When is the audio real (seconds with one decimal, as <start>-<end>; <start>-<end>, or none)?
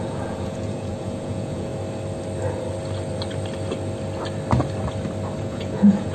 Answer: 1.7-5.4